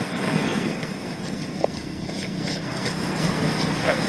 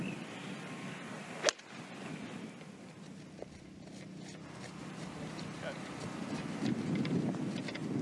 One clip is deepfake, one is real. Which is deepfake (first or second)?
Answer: first